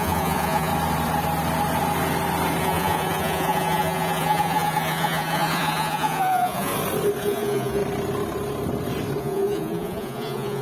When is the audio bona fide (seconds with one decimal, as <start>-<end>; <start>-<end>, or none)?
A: 0.7-2.6; 6.7-7.2; 7.8-9.2